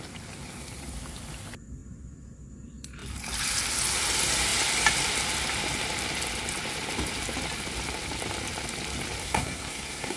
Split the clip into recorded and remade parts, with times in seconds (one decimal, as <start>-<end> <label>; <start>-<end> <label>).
0.0-9.2 recorded; 9.2-10.2 remade